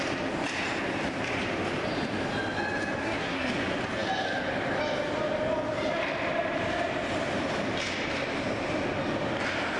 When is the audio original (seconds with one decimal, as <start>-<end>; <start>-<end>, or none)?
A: 0.0-3.0; 3.5-9.8

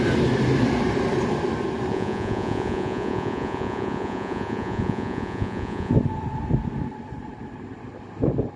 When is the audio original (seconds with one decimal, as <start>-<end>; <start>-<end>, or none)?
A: 0.0-1.9; 5.9-8.6